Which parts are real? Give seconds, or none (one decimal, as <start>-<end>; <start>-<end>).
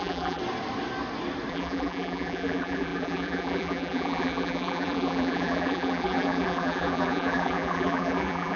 0.4-1.5